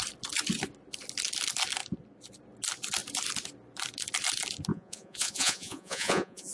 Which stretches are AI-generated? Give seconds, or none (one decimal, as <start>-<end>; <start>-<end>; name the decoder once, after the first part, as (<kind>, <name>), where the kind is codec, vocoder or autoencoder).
4.7-6.5 (vocoder, Vocos)